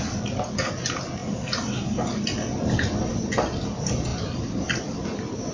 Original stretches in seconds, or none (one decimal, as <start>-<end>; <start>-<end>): 0.0-4.1